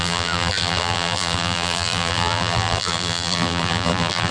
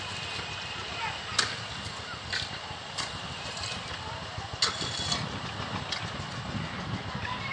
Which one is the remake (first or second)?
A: first